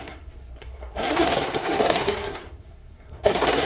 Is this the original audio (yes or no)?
no